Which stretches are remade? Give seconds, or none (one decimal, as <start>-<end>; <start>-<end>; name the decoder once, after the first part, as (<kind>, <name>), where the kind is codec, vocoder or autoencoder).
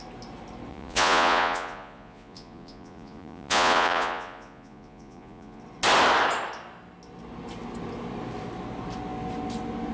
0.7-5.6 (vocoder, Vocos)